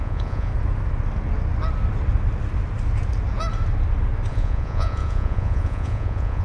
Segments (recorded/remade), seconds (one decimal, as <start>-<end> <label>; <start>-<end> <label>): 0.0-0.5 remade; 0.5-4.3 recorded; 4.3-6.4 remade